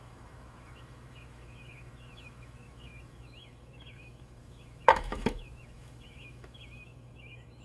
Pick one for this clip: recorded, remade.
remade